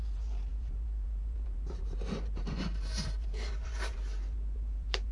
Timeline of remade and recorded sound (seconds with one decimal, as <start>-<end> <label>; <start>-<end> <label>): 0.0-5.1 remade